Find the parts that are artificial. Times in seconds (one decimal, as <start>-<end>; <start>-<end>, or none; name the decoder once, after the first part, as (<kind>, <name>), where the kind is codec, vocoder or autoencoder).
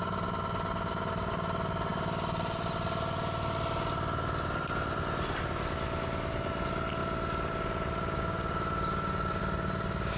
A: 1.9-2.7 (vocoder, BigVGAN v2); 7.0-9.4